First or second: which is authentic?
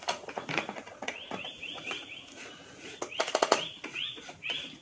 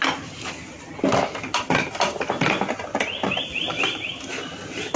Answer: second